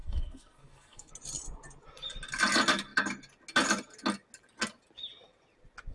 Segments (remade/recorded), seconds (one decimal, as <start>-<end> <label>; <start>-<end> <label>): 0.0-1.1 remade; 1.1-5.9 recorded